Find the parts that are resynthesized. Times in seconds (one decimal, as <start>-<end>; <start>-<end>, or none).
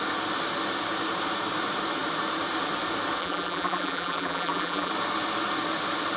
3.2-4.9